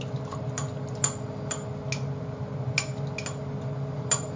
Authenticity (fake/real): real